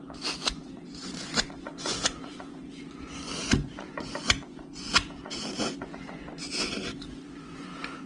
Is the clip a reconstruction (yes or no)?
yes